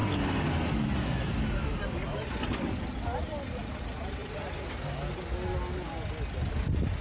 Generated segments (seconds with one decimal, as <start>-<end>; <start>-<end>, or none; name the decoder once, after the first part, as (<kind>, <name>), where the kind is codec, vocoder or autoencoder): none